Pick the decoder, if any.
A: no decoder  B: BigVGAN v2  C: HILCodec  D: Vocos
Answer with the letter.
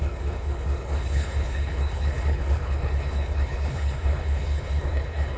C